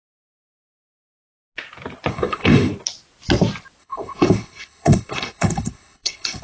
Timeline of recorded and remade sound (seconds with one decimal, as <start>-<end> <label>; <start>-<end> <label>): 0.0-2.1 recorded; 2.1-2.7 remade; 2.7-3.8 recorded; 3.8-6.4 remade